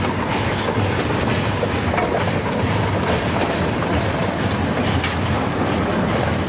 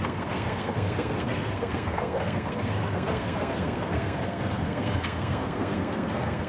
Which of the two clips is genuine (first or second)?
first